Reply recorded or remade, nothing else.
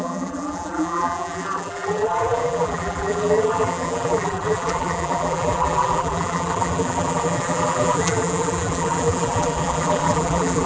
remade